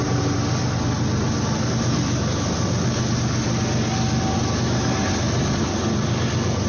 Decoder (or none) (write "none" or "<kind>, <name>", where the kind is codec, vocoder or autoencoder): none